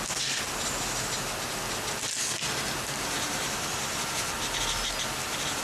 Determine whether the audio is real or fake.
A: real